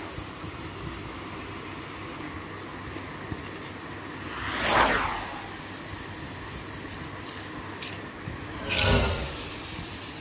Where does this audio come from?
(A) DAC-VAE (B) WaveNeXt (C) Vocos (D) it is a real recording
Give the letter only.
D